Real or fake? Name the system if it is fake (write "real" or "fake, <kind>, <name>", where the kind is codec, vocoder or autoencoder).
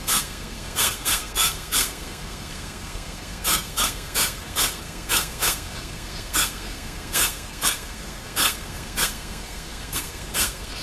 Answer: fake, codec, SNAC